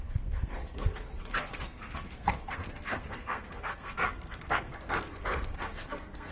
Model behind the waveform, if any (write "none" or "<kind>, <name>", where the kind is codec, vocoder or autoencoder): codec, SNAC